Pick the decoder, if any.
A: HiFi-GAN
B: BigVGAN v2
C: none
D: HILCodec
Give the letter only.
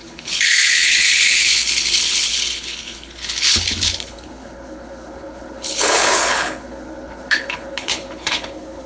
D